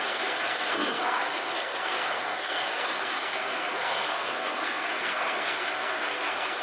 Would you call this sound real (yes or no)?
no